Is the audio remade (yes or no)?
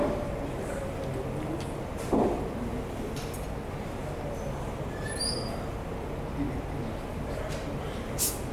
no